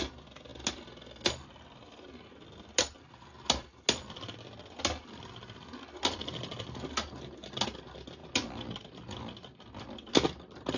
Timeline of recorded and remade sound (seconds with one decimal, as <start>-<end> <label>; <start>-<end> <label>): 0.0-10.8 recorded